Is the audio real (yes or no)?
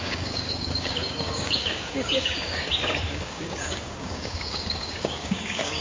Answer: no